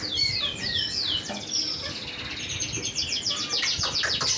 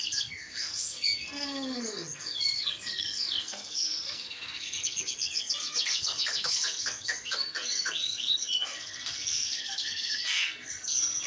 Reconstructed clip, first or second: second